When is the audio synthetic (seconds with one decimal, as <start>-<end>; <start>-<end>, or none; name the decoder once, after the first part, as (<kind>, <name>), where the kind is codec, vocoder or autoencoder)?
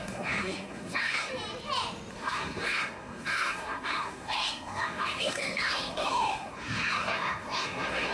0.0-1.3 (codec, SNAC); 2.1-8.1